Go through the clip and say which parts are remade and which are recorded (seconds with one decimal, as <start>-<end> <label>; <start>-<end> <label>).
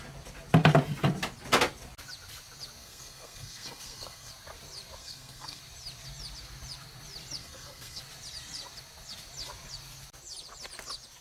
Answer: 0.0-2.8 recorded; 2.8-4.3 remade; 4.3-5.0 recorded; 5.0-5.6 remade; 5.6-7.4 recorded; 7.4-8.0 remade; 8.0-11.2 recorded